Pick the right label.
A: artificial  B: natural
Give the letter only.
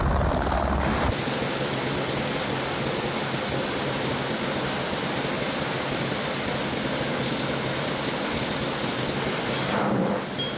B